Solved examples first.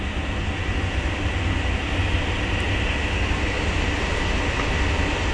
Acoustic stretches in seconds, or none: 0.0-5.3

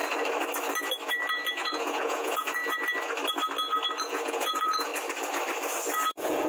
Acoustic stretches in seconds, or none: 0.0-1.5; 2.6-4.0; 4.9-6.1

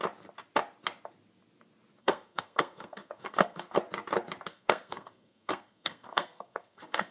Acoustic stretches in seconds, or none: 0.0-2.0; 3.8-4.5

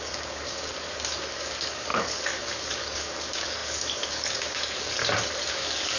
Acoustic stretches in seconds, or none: 5.0-5.5

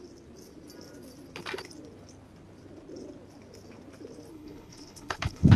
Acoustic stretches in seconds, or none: 0.0-4.3

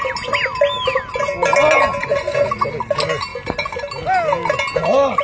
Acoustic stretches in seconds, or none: 0.0-5.2